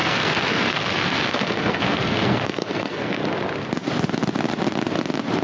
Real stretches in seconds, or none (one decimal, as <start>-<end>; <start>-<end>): 3.2-5.4